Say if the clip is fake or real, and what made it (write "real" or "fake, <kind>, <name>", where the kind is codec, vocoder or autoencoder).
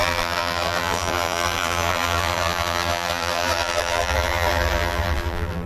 fake, vocoder, BigVGAN v2